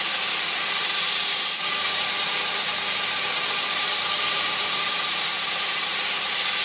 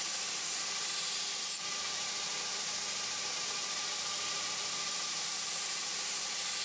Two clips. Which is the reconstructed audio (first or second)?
first